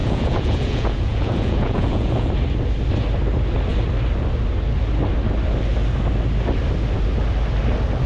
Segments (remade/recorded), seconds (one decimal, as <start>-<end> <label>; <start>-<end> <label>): 0.0-2.3 remade; 2.3-8.1 recorded